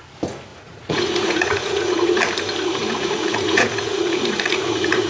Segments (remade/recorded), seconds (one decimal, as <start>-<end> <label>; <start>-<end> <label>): 0.0-0.5 recorded; 0.5-2.2 remade; 2.2-2.8 recorded; 2.8-5.1 remade